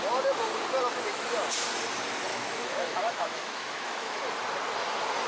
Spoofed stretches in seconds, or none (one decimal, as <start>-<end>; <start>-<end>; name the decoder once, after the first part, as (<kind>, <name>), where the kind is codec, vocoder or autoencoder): 2.3-4.2 (autoencoder, DAC-VAE)

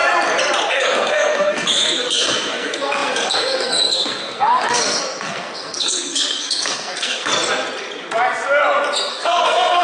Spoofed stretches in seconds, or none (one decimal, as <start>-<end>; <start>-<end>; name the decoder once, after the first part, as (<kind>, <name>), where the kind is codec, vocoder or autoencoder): 0.7-7.3 (codec, SNAC); 9.1-9.8

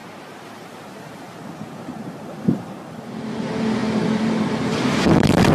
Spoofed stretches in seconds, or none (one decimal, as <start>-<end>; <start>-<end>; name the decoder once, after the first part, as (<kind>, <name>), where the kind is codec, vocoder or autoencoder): 0.0-5.5 (vocoder, BigVGAN v2)